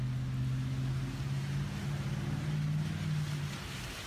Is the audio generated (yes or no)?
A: no